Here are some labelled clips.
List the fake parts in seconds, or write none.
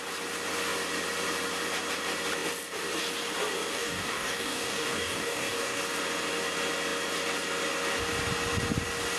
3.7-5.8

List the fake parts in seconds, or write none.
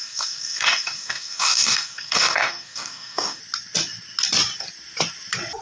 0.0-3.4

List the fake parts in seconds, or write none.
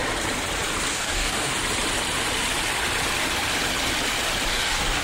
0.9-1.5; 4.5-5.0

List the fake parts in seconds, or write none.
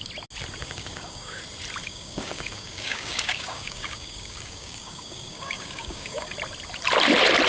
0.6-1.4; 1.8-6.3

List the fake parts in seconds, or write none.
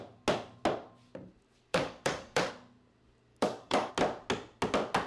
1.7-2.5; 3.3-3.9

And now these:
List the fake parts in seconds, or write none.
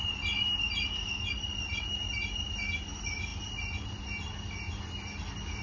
none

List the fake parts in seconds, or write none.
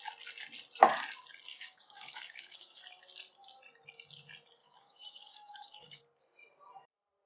1.5-2.8; 4.6-6.0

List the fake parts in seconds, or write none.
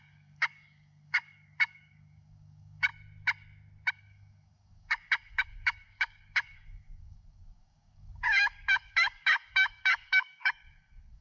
0.0-2.9; 3.9-11.2